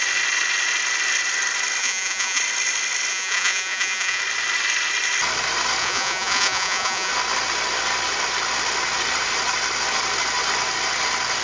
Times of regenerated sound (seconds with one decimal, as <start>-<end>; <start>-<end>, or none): 1.8-2.4; 3.1-4.2; 5.8-7.1